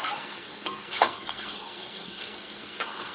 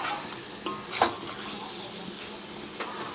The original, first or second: second